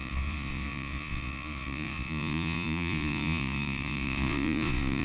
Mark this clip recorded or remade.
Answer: remade